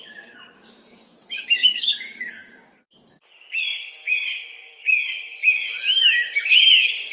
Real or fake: fake